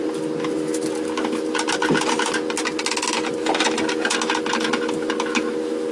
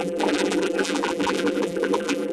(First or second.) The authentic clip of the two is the first